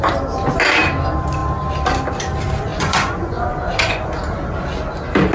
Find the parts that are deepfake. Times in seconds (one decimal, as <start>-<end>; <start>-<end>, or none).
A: 2.7-4.1